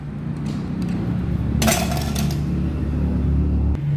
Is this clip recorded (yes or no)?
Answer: yes